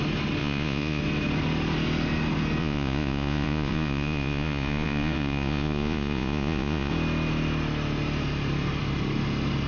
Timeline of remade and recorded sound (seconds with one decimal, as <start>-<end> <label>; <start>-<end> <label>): 0.0-0.4 recorded; 0.4-1.0 remade; 1.0-2.6 recorded; 2.6-6.9 remade; 6.9-9.7 recorded